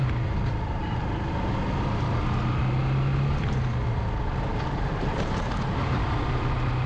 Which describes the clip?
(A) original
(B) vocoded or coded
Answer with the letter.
A